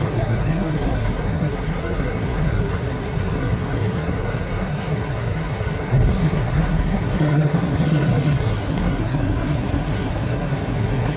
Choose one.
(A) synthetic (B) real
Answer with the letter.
A